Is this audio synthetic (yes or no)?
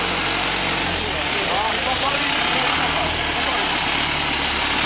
no